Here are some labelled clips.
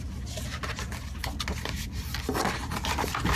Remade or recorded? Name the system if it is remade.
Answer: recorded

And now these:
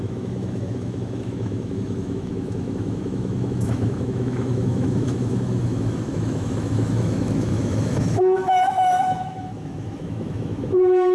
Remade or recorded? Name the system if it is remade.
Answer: remade, autoencoder, DAC-VAE